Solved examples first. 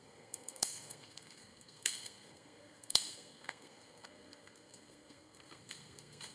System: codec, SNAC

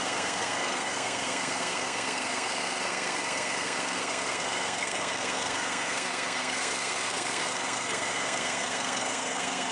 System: codec, SNAC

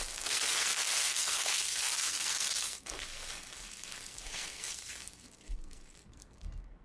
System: codec, SNAC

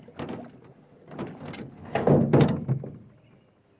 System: none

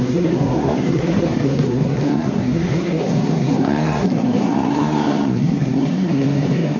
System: codec, SNAC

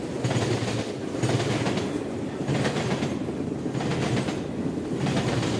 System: none